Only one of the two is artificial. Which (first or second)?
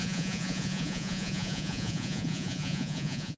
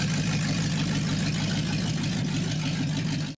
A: first